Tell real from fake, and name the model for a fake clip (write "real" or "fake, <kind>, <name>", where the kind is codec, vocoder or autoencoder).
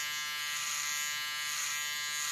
real